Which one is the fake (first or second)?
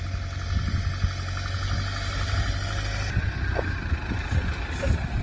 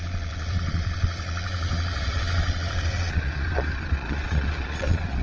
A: second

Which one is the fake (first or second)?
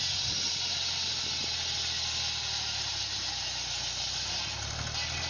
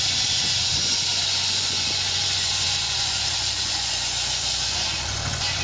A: second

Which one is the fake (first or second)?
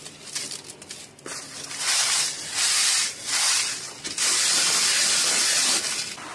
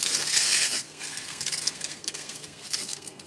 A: second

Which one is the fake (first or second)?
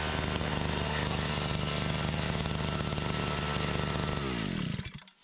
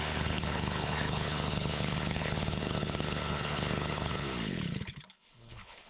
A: second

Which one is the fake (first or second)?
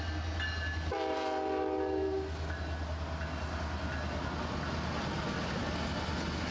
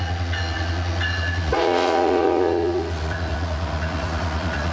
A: second